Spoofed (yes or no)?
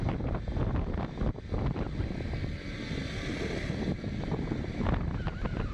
no